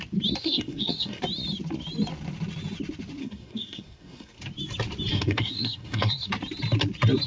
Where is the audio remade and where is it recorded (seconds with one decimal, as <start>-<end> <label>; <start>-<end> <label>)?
0.0-0.4 recorded; 0.4-1.2 remade; 1.2-3.2 recorded; 3.2-4.4 remade; 4.4-5.1 recorded; 5.1-6.3 remade; 6.3-7.3 recorded

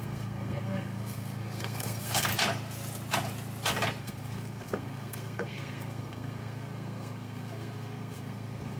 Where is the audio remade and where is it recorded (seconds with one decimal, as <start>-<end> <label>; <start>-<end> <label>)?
0.0-2.3 remade; 2.3-4.0 recorded; 4.0-8.8 remade

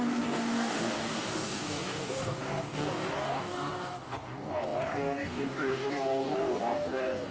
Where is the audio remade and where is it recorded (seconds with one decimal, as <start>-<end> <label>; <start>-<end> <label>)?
0.0-7.3 remade